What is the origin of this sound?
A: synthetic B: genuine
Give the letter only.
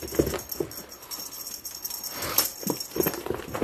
B